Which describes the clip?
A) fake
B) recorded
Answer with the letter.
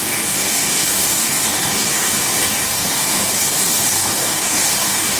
A